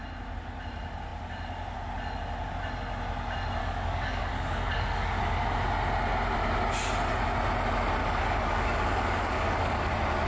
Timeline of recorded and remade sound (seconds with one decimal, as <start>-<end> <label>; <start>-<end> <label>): 0.0-3.6 recorded; 3.6-5.4 remade; 5.4-8.0 recorded; 8.0-9.9 remade; 9.9-10.3 recorded